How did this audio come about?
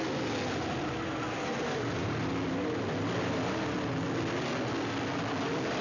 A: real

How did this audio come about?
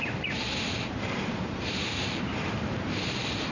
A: fake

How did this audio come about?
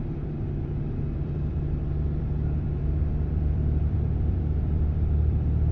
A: fake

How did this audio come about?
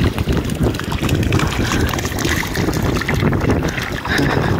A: real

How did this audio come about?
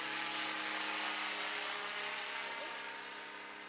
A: real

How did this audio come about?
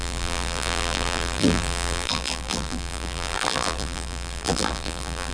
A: fake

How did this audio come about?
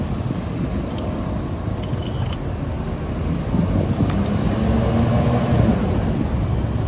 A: real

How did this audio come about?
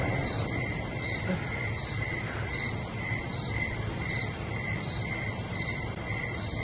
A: real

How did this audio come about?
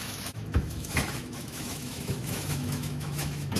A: fake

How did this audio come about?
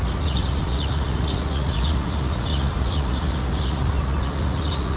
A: fake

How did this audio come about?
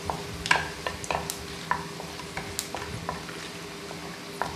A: real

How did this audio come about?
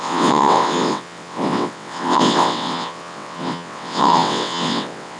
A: fake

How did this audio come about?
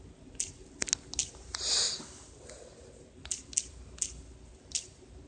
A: real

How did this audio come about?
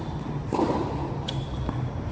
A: real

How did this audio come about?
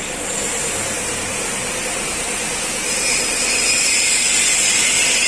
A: real